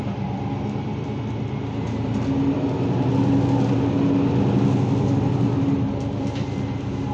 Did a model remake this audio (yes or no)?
no